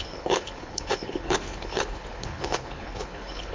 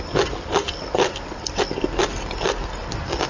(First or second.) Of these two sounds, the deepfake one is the first